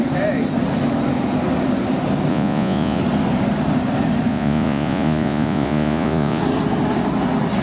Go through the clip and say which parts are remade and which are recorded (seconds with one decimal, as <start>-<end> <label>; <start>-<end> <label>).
0.0-2.3 recorded; 2.3-3.0 remade; 3.0-4.3 recorded; 4.3-6.4 remade; 6.4-7.6 recorded